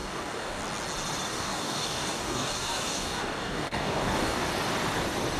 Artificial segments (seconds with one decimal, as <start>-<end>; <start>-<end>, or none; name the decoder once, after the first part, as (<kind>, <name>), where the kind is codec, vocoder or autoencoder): 0.0-0.6 (codec, DAC); 1.3-4.5